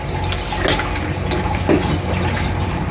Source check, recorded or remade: recorded